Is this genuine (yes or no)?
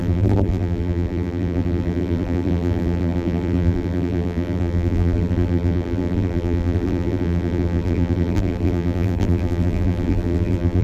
no